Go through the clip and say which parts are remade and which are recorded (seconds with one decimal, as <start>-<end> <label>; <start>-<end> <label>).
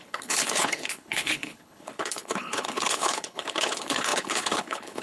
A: 0.0-5.0 remade